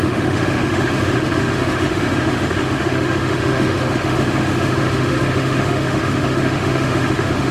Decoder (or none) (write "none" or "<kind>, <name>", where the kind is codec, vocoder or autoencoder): autoencoder, DAC-VAE